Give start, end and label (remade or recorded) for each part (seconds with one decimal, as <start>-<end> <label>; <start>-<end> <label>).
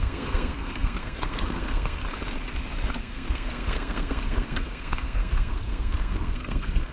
0.0-2.0 remade; 2.0-3.0 recorded; 3.0-6.9 remade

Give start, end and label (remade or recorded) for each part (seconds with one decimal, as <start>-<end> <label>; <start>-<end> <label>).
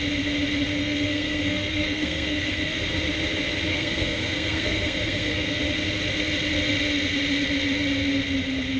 0.0-0.8 recorded; 0.8-2.8 remade; 2.8-3.7 recorded; 3.7-5.6 remade; 5.6-8.8 recorded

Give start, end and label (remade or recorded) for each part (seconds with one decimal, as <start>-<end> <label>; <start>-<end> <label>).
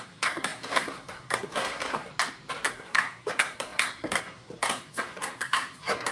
0.0-2.1 remade; 2.1-2.7 recorded; 2.7-6.1 remade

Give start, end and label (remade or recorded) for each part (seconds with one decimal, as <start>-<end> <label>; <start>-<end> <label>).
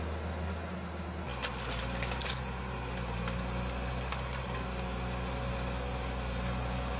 0.0-7.0 recorded